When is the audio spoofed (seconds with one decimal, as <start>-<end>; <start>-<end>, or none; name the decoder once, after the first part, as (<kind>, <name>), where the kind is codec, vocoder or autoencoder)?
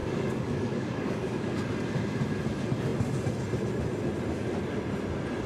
0.0-1.7 (codec, DAC)